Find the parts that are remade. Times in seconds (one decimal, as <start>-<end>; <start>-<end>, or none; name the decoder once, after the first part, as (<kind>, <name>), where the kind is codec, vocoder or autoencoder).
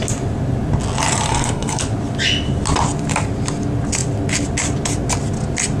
1.3-1.8 (codec, SNAC)